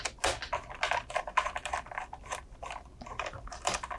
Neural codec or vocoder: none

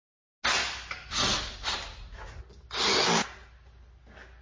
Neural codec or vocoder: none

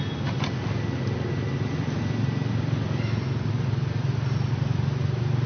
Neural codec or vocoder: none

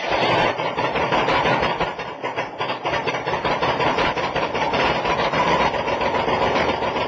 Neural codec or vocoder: vocoder, BigVGAN v2